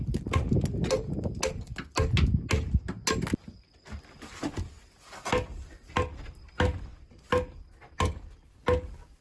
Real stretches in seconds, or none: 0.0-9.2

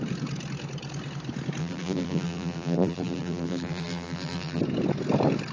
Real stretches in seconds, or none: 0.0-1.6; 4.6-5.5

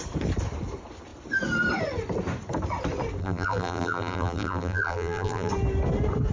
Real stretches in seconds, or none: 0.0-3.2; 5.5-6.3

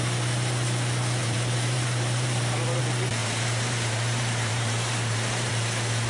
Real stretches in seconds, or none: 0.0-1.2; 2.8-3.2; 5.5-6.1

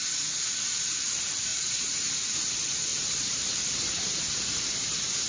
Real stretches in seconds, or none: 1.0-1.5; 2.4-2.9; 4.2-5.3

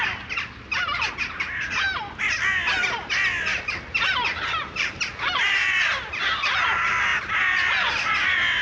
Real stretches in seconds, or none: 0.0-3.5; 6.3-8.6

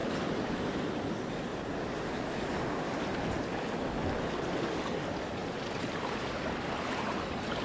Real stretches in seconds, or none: 0.8-1.5; 2.3-7.6

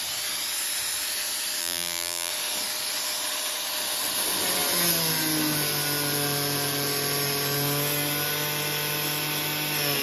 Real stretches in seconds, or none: 0.0-1.6; 2.3-10.0